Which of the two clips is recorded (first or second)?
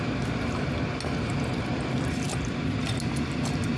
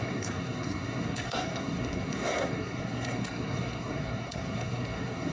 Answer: first